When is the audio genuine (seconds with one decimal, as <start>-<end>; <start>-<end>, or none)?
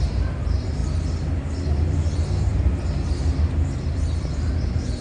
0.8-1.7